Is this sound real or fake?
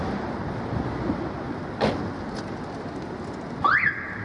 real